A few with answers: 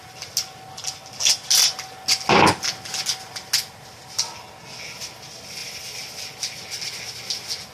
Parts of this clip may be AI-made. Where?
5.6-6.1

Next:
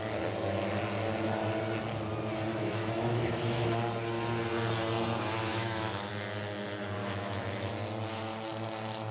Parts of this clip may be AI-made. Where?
2.5-3.7; 5.5-6.1; 7.0-7.7

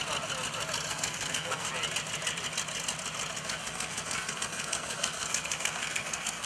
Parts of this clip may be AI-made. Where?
0.9-1.7; 3.4-6.5